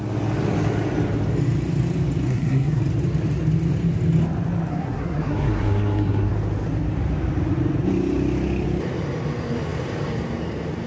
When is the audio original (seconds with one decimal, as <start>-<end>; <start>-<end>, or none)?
0.0-2.3; 2.8-4.7; 6.3-10.9